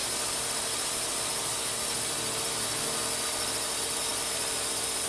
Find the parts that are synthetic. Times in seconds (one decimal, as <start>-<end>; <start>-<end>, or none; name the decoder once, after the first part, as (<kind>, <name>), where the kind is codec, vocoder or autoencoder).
none